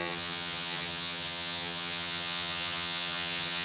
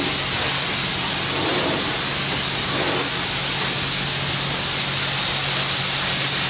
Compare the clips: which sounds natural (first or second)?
second